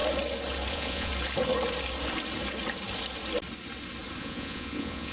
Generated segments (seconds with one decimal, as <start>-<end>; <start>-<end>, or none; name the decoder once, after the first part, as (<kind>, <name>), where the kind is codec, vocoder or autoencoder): 0.7-1.1 (vocoder, Vocos); 4.2-5.1